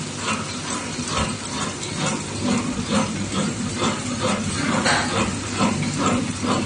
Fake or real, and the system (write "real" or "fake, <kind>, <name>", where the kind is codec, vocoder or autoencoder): real